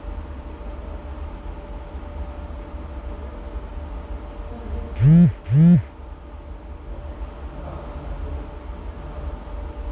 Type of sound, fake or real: real